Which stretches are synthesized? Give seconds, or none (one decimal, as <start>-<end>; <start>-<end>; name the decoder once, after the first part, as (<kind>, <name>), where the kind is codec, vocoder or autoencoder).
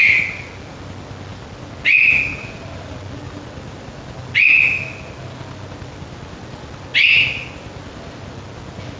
none